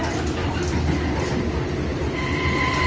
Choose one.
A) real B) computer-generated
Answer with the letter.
B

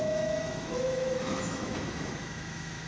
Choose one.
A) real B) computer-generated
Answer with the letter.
B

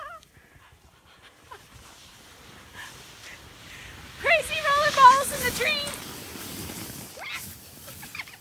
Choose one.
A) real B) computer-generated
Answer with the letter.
A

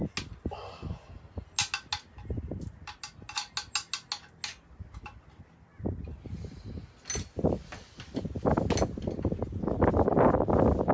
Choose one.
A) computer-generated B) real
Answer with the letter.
B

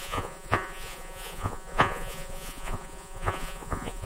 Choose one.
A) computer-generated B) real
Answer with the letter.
A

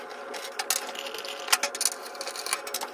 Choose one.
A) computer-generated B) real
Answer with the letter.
B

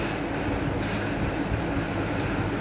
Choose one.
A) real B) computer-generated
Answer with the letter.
A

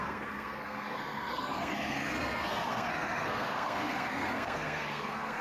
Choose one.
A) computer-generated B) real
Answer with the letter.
A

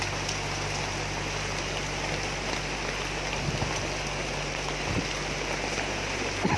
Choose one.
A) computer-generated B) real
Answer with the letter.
B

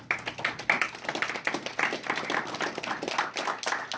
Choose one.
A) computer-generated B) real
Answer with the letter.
B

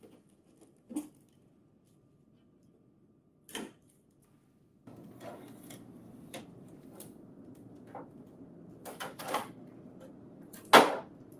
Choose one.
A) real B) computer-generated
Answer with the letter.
A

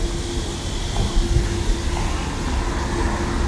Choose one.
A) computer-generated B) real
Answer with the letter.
B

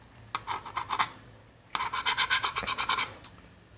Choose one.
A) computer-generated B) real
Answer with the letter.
B